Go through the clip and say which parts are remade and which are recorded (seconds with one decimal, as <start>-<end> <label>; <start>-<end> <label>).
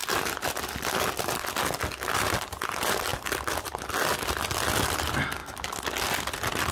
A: 0.0-0.9 remade; 0.9-6.7 recorded